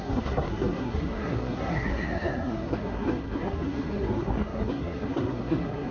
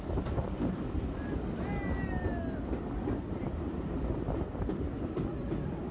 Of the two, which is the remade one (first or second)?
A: first